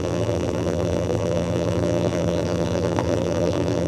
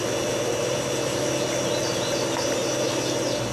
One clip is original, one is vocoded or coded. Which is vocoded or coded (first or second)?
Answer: first